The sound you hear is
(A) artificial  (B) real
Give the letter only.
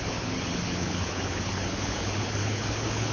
A